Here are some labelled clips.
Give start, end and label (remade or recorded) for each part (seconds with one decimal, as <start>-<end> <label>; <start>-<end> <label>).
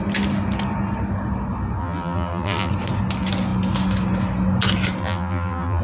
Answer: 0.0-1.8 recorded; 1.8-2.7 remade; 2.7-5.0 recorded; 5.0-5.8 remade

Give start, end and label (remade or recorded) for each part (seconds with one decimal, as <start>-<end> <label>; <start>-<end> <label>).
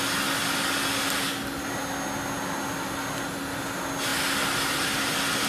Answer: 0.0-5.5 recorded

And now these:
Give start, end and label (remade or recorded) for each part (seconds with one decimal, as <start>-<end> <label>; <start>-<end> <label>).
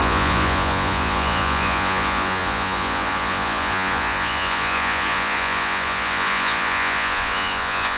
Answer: 0.0-8.0 remade